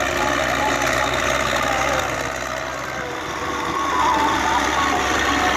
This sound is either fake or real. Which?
real